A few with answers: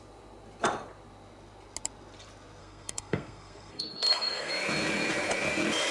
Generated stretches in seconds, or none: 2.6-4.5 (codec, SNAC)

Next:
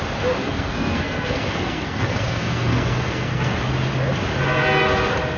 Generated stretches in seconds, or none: 0.4-3.6 (codec, SNAC)

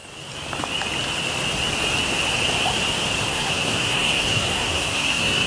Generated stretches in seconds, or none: 3.3-5.5 (codec, SNAC)

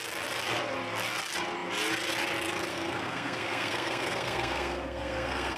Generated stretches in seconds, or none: 2.7-5.6 (codec, SNAC)

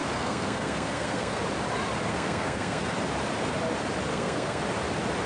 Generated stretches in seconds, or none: 0.0-1.4 (codec, SNAC); 2.1-2.9; 4.1-4.6

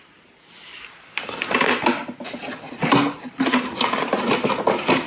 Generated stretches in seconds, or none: none